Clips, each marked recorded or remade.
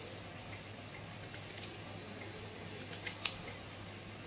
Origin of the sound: recorded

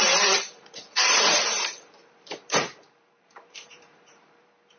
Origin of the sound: remade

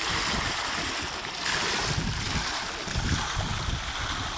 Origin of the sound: recorded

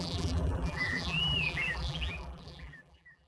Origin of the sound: remade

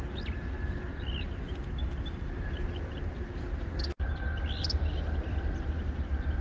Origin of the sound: recorded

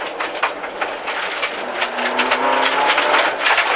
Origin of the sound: recorded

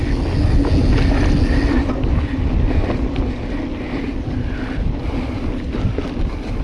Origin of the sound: recorded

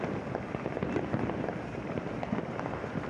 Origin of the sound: recorded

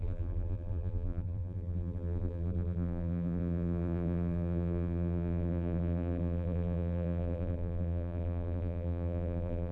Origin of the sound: remade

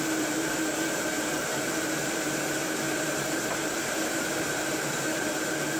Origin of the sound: remade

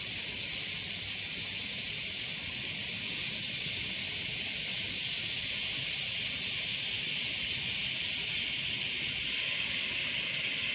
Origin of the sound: recorded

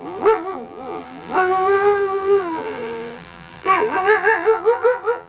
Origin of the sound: remade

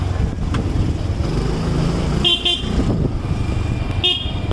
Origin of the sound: recorded